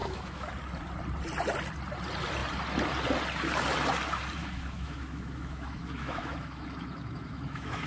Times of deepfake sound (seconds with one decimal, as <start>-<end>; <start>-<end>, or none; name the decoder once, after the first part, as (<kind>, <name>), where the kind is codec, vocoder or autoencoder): 0.0-0.5 (autoencoder, DAC-VAE); 4.4-7.9